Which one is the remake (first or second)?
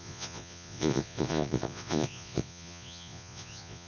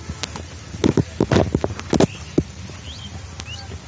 first